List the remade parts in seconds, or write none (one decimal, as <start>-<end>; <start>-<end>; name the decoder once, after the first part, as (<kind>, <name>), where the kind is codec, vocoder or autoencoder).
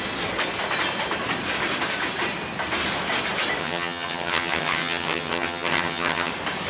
3.6-6.3 (vocoder, HiFi-GAN)